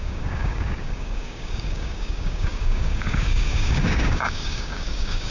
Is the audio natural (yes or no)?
no